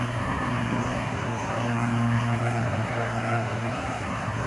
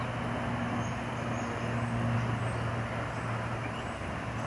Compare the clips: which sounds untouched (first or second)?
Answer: second